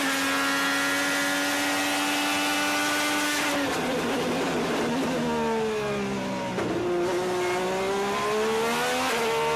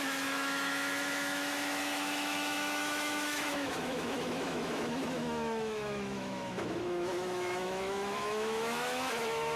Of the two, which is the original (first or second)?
first